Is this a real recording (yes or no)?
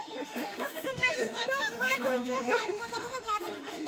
no